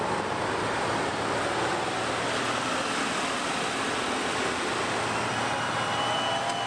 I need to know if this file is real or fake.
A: real